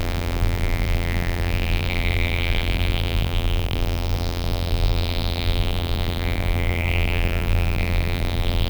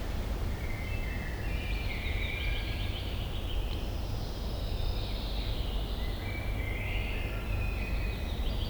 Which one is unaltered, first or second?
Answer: second